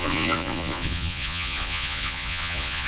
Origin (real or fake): fake